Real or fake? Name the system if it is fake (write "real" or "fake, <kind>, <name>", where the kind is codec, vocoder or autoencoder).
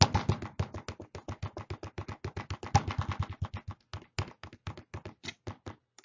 real